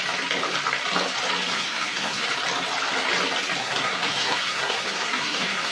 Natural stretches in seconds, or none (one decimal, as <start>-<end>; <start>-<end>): 0.0-1.5; 2.3-3.6